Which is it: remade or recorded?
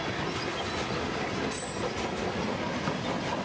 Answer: recorded